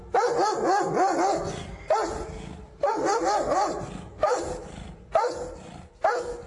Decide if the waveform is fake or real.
real